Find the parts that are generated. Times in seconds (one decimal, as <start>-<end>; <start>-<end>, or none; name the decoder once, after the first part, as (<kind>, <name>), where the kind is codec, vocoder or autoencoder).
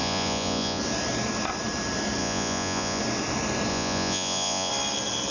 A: 0.0-0.8 (vocoder, Vocos); 2.2-3.0; 3.7-4.7